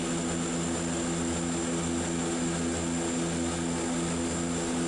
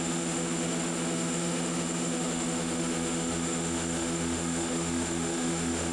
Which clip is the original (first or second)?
first